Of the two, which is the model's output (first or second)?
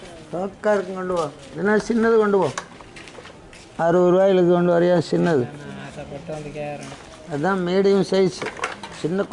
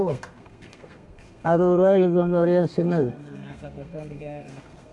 second